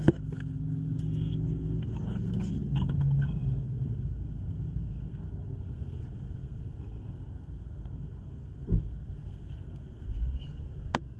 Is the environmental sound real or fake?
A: fake